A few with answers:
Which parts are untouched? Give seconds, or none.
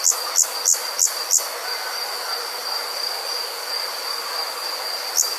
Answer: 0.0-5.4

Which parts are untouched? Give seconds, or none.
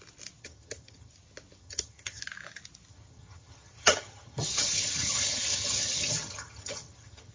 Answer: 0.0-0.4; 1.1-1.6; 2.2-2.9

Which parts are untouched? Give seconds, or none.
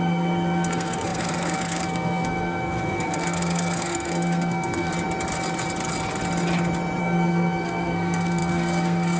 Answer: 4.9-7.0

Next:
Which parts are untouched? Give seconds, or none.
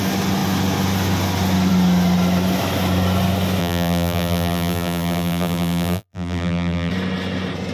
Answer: 0.0-3.6; 6.9-7.7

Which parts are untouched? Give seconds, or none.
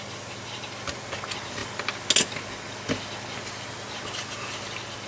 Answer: 0.0-5.1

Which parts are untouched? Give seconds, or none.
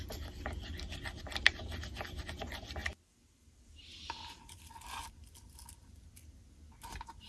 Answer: 0.0-7.3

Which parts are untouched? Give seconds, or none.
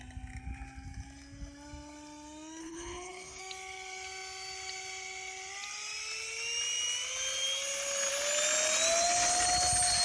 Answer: 0.0-2.6; 3.4-10.0